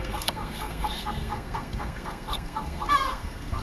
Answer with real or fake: fake